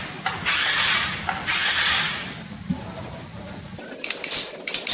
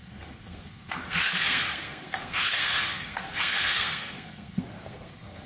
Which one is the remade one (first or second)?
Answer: second